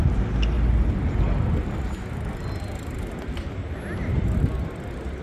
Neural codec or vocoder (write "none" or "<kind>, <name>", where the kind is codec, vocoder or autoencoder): none